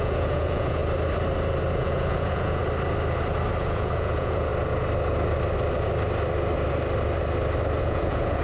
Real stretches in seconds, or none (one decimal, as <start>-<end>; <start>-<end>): 0.8-1.7; 2.6-3.6; 4.5-7.8